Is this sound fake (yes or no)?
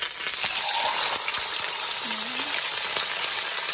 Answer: no